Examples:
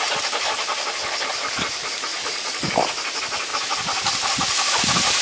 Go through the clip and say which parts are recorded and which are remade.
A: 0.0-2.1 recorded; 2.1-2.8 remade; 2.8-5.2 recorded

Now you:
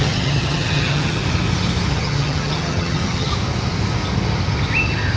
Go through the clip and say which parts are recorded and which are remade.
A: 0.0-1.2 remade; 1.2-1.9 recorded; 1.9-3.3 remade; 3.3-5.2 recorded

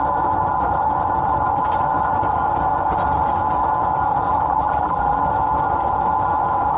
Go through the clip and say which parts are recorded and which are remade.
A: 0.0-4.3 recorded; 4.3-5.2 remade; 5.2-6.8 recorded

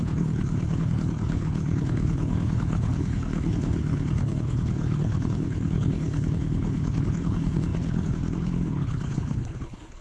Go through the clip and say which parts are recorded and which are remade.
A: 0.0-10.0 remade

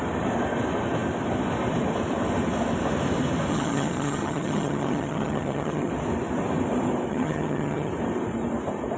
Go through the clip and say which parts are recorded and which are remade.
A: 0.0-3.5 recorded; 3.5-5.9 remade; 5.9-7.1 recorded; 7.1-7.9 remade; 7.9-9.0 recorded

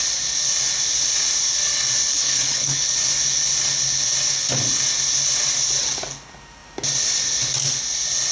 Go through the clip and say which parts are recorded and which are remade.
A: 0.0-2.1 recorded; 2.1-2.9 remade; 2.9-8.3 recorded

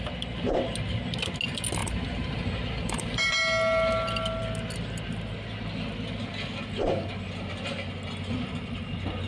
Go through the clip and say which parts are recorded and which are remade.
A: 0.0-1.8 recorded; 1.8-3.3 remade; 3.3-9.3 recorded

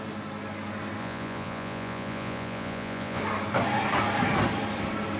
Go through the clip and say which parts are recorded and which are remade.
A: 0.0-1.0 recorded; 1.0-3.2 remade; 3.2-5.2 recorded